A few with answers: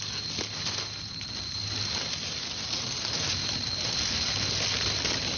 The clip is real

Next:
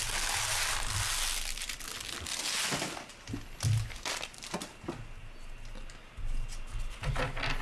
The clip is real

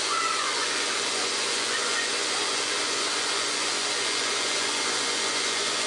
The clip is fake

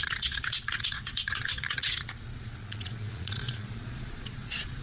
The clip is fake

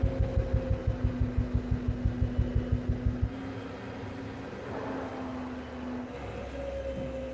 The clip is real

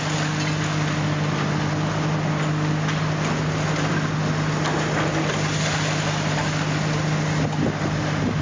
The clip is real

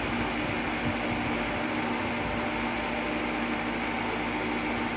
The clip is real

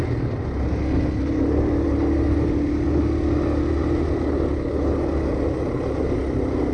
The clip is real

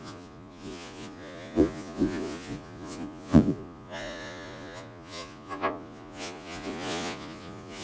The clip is fake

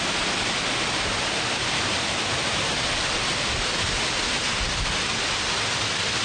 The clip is real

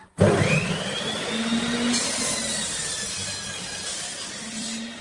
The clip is real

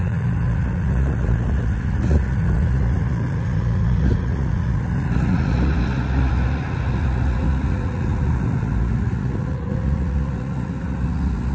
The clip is fake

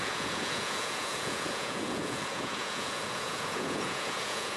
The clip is fake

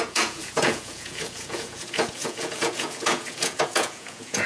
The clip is fake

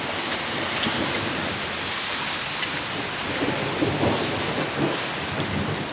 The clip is real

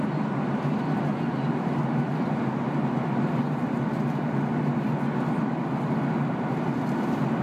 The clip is real